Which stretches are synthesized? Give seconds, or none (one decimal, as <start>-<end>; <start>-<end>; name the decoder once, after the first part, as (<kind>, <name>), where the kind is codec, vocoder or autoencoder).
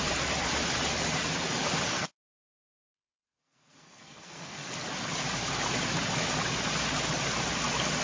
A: 1.9-4.7 (codec, SNAC)